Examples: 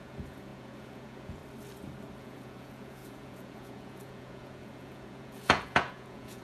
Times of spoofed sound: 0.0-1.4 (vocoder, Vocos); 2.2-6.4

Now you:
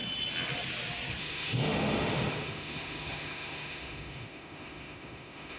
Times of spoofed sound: 1.2-5.6 (autoencoder, DAC-VAE)

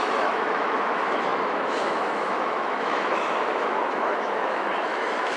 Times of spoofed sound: 0.0-5.4 (autoencoder, DAC-VAE)

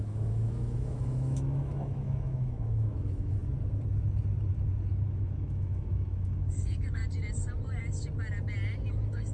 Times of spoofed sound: 0.0-3.4 (autoencoder, DAC-VAE); 4.9-7.0; 8.9-9.3